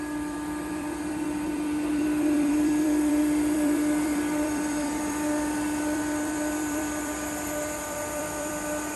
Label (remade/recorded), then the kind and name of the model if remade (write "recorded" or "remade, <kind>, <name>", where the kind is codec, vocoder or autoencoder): remade, vocoder, BigVGAN v2